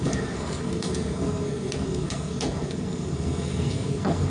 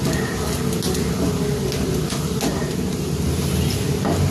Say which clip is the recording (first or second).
second